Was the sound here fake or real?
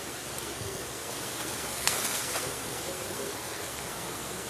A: fake